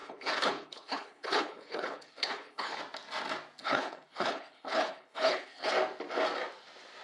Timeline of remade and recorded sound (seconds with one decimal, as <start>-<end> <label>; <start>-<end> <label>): 0.0-2.8 remade; 2.8-3.6 recorded; 3.6-5.7 remade; 5.7-7.0 recorded

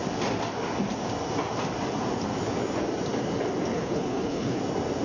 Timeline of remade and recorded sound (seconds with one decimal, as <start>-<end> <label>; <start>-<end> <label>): 0.0-3.7 recorded; 3.7-4.6 remade; 4.6-5.0 recorded

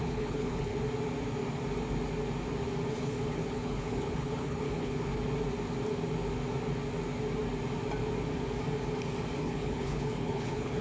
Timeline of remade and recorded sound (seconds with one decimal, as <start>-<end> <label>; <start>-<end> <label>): 0.0-0.7 remade; 0.7-3.0 recorded; 3.0-5.1 remade; 5.1-9.4 recorded; 9.4-10.8 remade

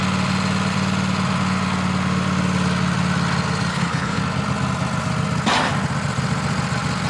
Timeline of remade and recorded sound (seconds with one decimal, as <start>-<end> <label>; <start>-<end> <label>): 0.0-3.7 recorded; 3.7-4.2 remade; 4.2-7.1 recorded